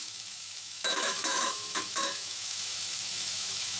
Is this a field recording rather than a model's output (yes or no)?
no